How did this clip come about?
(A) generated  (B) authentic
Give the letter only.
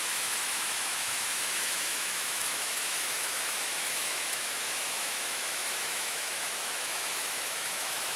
A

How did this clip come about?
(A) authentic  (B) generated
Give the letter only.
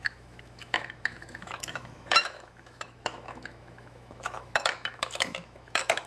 B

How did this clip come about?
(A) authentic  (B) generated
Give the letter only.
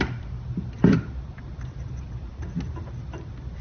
A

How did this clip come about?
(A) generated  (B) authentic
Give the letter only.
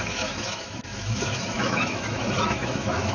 A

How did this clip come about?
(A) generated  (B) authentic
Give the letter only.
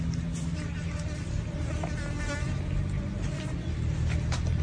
B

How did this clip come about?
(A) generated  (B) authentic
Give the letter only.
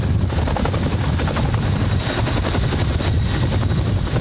B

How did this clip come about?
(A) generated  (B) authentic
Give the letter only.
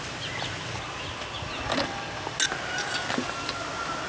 B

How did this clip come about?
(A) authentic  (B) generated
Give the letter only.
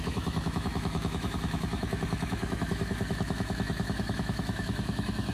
B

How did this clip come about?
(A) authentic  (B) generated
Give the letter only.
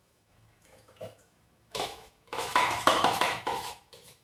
B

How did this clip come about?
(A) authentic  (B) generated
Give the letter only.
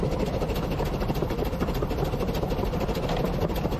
A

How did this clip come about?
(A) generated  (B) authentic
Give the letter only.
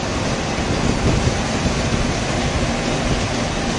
B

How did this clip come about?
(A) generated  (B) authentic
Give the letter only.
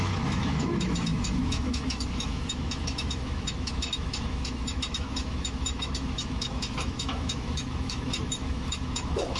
A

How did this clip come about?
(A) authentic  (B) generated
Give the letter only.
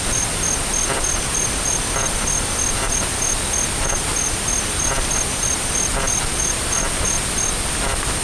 A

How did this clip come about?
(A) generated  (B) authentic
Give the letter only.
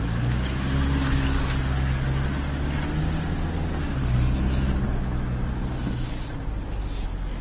B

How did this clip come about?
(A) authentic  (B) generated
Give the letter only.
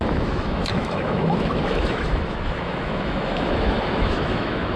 B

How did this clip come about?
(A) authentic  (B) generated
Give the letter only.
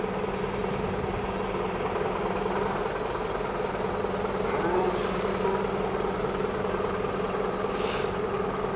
A